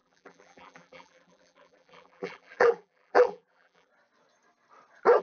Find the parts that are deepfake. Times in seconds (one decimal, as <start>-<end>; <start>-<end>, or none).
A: 0.0-3.9

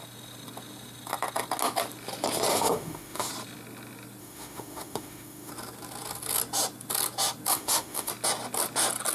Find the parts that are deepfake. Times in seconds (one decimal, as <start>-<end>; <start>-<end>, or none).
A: 2.5-3.3; 4.2-5.5; 7.5-8.1

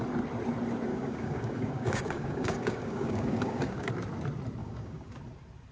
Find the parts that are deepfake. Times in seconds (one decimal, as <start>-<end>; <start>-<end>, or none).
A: 0.9-3.9; 4.6-5.1

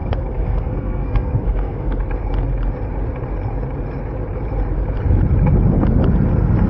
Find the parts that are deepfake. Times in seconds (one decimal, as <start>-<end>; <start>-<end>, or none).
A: 0.0-2.0

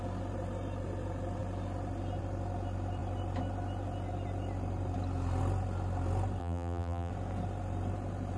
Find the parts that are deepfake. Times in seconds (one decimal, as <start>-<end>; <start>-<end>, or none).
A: 6.4-7.1

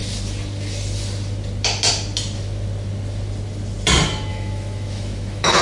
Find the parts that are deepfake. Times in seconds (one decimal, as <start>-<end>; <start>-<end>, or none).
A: 4.3-5.6

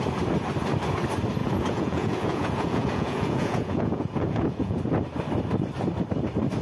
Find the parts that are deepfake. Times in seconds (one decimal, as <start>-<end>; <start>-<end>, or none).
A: 1.4-4.8

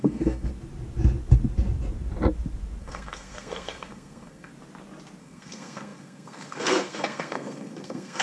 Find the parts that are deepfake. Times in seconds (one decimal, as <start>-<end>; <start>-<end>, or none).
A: 0.0-0.5; 2.8-4.5; 5.2-8.2